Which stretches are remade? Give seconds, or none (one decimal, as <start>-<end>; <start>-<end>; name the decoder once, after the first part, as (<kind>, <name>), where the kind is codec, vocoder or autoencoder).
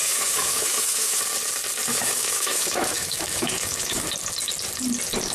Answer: 0.0-1.2 (autoencoder, DAC-VAE); 1.9-4.1